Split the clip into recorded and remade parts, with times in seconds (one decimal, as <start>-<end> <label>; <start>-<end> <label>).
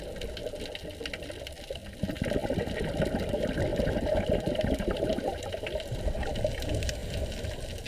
0.0-3.7 recorded; 3.7-5.4 remade; 5.4-7.9 recorded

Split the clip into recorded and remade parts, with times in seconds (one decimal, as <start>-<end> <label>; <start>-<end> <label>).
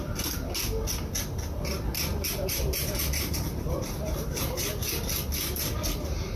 0.0-2.1 recorded; 2.1-4.6 remade; 4.6-6.4 recorded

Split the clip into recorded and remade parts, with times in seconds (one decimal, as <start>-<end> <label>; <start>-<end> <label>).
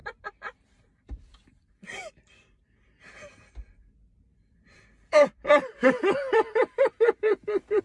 0.0-2.1 remade; 2.1-4.3 recorded; 4.3-7.8 remade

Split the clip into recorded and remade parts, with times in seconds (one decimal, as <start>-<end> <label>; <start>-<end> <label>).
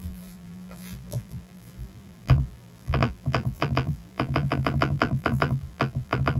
0.0-6.4 remade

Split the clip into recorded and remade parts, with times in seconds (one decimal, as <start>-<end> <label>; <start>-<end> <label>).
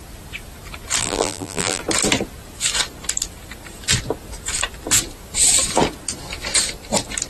0.0-1.0 recorded; 1.0-1.8 remade; 1.8-7.3 recorded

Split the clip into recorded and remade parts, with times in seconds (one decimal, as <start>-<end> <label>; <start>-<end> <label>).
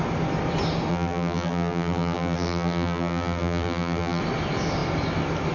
0.0-0.9 recorded; 0.9-4.2 remade; 4.2-5.5 recorded